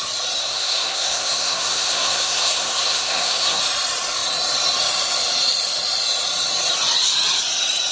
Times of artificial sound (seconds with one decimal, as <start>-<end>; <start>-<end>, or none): 0.4-3.6